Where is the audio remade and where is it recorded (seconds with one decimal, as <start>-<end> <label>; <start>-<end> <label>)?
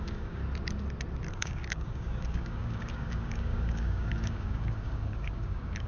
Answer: 0.0-0.4 remade; 0.4-1.3 recorded; 1.3-5.9 remade